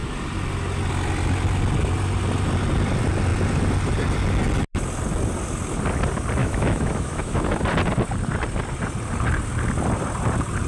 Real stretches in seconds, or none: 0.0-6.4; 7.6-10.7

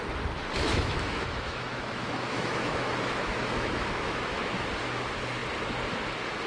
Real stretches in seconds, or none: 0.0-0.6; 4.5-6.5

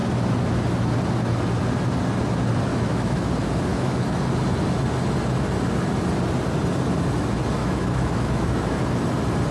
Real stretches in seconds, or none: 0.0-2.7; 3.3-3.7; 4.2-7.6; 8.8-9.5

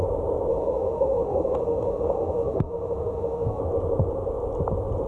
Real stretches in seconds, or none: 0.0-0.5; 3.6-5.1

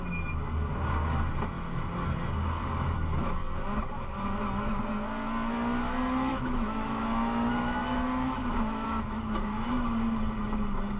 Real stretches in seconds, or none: 0.0-6.3; 7.5-8.4; 9.7-11.0

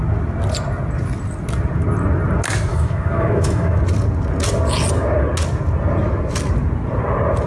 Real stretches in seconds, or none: 0.0-2.7; 3.8-7.5

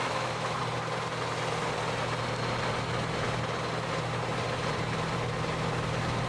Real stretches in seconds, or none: 0.6-6.3